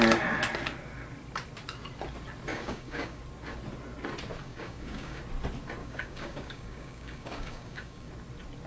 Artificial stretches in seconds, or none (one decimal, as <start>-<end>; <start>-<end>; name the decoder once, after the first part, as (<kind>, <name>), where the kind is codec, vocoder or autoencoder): 2.5-3.2 (codec, DAC); 4.4-5.2; 5.8-8.1